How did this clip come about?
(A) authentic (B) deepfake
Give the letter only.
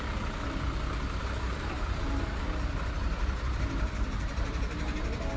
B